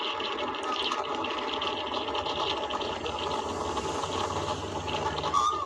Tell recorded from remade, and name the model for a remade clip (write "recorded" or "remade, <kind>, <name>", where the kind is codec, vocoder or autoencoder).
recorded